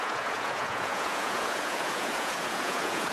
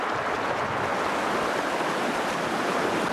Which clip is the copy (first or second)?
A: first